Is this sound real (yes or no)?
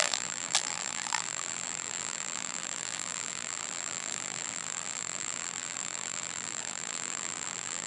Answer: no